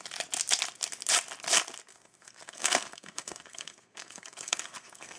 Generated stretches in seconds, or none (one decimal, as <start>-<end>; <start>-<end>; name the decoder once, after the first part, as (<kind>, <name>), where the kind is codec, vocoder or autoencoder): 1.9-5.2 (codec, SNAC)